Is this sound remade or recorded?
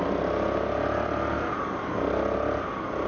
recorded